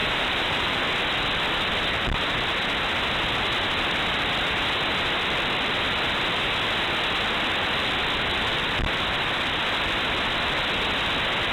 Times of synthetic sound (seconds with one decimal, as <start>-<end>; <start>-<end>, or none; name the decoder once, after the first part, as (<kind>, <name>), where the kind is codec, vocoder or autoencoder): 0.0-0.8 (vocoder, BigVGAN v2)